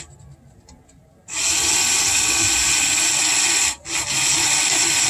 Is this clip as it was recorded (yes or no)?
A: yes